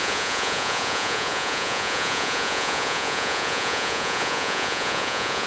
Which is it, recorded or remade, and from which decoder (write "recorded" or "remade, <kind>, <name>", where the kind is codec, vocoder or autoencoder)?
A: remade, vocoder, Vocos